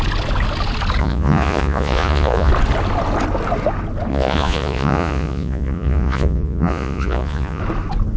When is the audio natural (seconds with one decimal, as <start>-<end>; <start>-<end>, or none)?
0.0-1.0; 2.5-4.1; 7.6-8.2